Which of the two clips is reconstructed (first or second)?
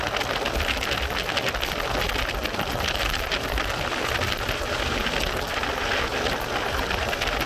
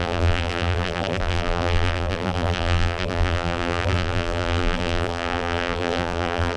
second